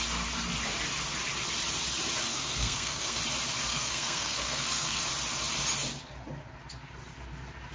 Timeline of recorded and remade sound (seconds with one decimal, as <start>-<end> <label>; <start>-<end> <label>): 0.0-2.3 recorded; 2.3-3.2 remade; 3.2-3.7 recorded; 3.7-5.0 remade; 5.0-7.7 recorded